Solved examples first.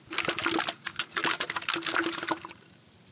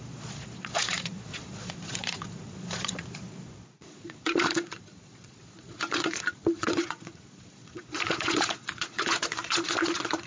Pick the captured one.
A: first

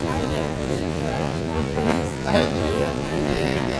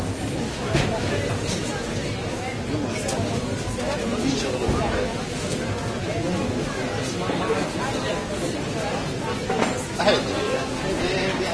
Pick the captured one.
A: second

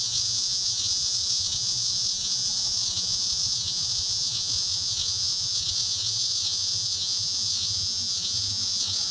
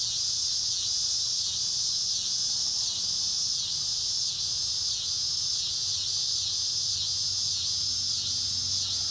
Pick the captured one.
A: second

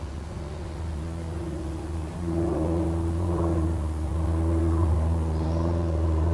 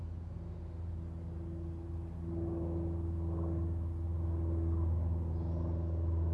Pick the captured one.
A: second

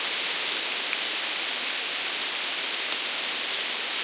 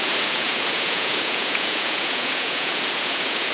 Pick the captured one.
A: first